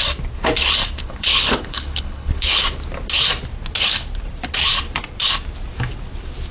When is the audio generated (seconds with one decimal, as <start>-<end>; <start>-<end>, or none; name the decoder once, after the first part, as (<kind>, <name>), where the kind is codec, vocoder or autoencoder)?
1.0-2.6 (codec, HILCodec)